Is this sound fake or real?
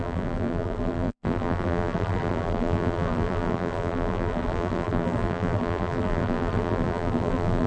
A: fake